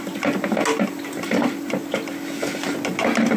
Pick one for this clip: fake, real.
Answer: real